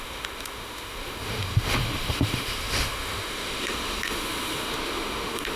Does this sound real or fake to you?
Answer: fake